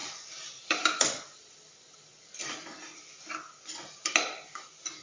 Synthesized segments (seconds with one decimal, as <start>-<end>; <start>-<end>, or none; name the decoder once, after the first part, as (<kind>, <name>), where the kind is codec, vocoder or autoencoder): 0.0-3.0 (vocoder, BigVGAN v2)

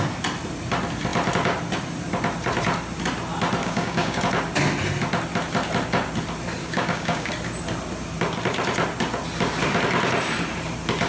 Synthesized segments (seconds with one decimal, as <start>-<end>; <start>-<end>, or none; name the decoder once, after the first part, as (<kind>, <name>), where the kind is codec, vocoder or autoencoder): 3.6-4.2 (codec, DAC); 6.6-7.3

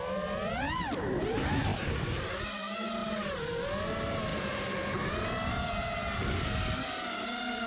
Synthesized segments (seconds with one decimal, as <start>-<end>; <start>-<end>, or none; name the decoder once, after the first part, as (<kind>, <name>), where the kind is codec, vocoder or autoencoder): 1.7-2.2 (vocoder, BigVGAN v2); 3.0-3.5; 4.3-5.1